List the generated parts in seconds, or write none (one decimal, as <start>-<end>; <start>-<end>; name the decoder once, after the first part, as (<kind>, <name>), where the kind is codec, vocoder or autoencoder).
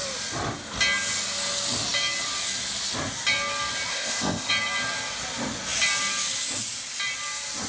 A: 3.9-4.5 (codec, ZipCodec)